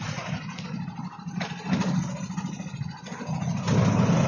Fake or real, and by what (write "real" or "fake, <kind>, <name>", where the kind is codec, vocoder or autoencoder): real